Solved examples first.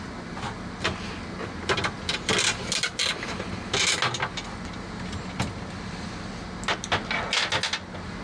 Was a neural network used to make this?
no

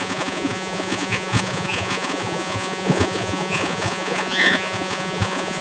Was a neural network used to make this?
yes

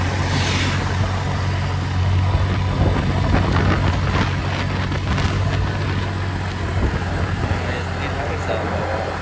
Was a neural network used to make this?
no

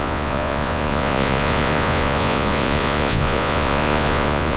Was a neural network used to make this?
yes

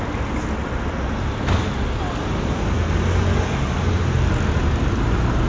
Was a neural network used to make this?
no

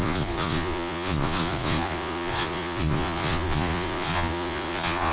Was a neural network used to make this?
yes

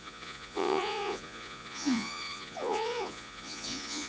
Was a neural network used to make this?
yes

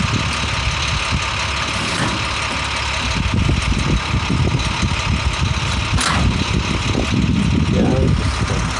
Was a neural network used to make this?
no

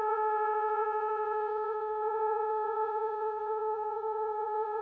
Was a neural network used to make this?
yes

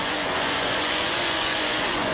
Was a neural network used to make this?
yes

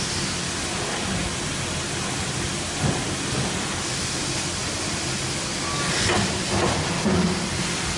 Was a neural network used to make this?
no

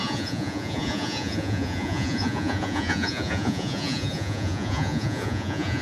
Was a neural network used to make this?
yes